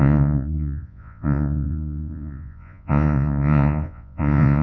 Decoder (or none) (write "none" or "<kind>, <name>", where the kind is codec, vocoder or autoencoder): vocoder, Vocos